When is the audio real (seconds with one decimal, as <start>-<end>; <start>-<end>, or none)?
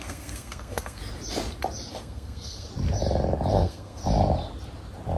1.0-1.9; 2.7-3.5; 4.0-5.2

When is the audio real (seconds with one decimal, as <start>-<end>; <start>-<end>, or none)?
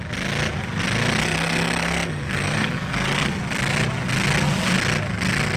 0.0-1.2; 3.4-5.6